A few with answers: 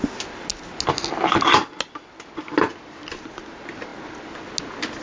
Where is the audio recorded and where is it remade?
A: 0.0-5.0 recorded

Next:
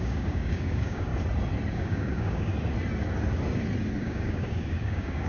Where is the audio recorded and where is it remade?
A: 0.0-1.1 remade; 1.1-1.7 recorded; 1.7-2.5 remade; 2.5-4.0 recorded; 4.0-5.3 remade